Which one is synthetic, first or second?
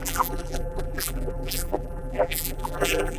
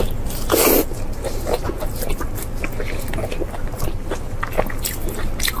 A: first